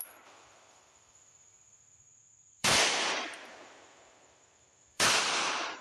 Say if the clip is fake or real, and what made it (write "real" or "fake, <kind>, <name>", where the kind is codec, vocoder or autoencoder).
fake, vocoder, BigVGAN v2